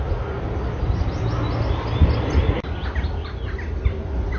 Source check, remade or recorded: recorded